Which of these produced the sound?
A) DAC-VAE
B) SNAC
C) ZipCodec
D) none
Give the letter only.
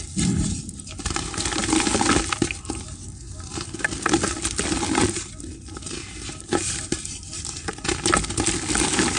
D